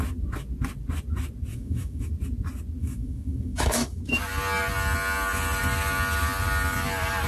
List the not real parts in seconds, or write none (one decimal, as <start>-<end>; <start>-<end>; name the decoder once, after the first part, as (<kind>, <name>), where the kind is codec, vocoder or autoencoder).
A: 1.5-2.1 (autoencoder, DAC-VAE); 2.8-4.0

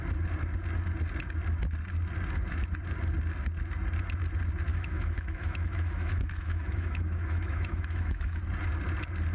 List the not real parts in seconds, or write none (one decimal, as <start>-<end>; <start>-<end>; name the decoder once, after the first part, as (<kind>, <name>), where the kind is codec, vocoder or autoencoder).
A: 4.7-8.4 (autoencoder, DAC-VAE)

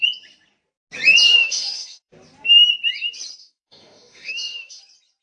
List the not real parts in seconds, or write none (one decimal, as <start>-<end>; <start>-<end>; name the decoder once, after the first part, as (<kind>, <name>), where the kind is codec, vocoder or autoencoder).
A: 1.4-2.1 (autoencoder, DAC-VAE); 3.4-4.8